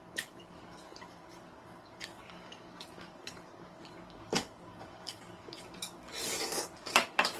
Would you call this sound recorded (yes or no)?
no